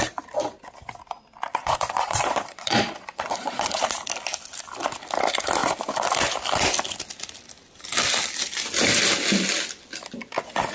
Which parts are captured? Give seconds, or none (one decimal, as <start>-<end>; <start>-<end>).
0.0-1.5; 3.8-10.7